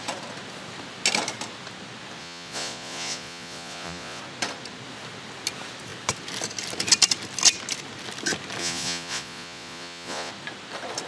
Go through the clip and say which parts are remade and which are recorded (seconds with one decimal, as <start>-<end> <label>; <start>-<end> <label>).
0.0-2.2 recorded; 2.2-4.2 remade; 4.2-8.6 recorded; 8.6-10.3 remade; 10.3-11.1 recorded